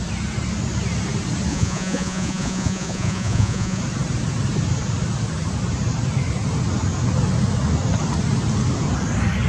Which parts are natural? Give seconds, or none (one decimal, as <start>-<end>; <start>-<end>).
0.0-1.5; 3.8-9.5